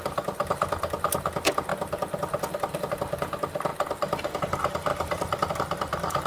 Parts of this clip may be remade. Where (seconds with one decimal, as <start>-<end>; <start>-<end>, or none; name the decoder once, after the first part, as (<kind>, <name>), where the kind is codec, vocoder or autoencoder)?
1.7-2.9 (vocoder, BigVGAN v2); 4.9-5.5